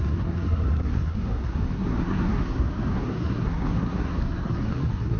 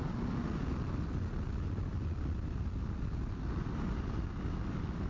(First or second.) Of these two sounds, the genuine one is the second